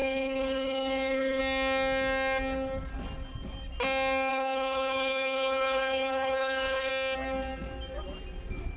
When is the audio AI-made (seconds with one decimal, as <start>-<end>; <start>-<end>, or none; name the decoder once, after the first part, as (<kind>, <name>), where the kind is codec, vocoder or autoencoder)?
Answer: 0.0-1.4 (codec, HILCodec); 4.3-6.9